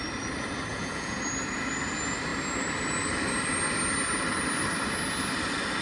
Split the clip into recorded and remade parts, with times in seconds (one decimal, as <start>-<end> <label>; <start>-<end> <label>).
0.0-0.7 recorded; 0.7-1.2 remade; 1.2-5.8 recorded